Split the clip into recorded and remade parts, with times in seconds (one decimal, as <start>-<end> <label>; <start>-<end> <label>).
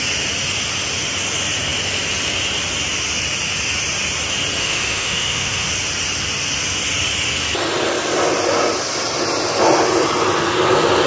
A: 0.0-4.6 recorded; 4.6-5.7 remade; 5.7-11.1 recorded